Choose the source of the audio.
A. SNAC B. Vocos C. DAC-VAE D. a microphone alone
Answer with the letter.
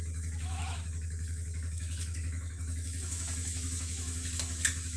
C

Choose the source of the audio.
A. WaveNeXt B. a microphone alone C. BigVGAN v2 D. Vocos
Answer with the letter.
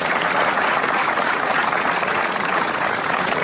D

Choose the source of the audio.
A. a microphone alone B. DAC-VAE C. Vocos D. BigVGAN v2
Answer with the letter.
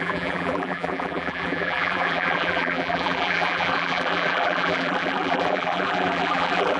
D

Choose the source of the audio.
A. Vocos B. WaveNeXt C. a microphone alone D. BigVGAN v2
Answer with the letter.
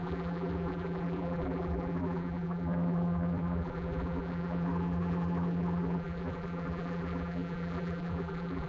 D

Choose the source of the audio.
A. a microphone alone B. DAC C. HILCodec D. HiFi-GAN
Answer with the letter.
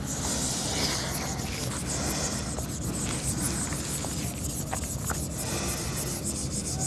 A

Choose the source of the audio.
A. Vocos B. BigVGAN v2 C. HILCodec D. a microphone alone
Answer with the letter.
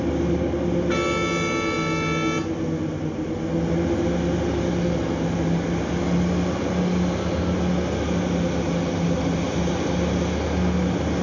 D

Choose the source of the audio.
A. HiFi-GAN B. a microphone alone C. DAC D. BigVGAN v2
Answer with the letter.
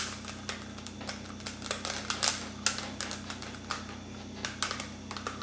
B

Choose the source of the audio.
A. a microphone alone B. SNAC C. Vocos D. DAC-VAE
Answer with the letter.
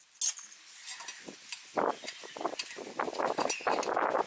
A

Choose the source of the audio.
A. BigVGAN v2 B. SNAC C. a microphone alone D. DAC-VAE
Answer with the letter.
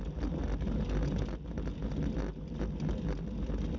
C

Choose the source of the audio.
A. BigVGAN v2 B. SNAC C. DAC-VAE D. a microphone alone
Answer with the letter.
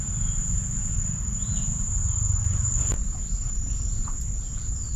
A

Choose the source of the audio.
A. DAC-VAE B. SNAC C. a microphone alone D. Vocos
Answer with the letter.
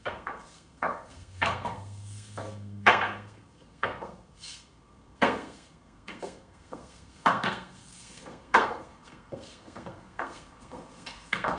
B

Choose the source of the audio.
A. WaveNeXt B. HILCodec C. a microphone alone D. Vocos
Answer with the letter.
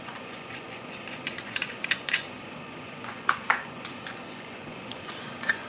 D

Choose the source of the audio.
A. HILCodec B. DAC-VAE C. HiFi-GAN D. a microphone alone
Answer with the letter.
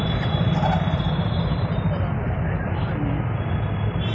D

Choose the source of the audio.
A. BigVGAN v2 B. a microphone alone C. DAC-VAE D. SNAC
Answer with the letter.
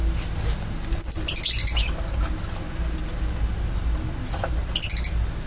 B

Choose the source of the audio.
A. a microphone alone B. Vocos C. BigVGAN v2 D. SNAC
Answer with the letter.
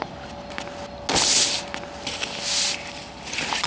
A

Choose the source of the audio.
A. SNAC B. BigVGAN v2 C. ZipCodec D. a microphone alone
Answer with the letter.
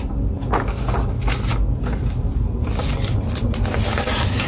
D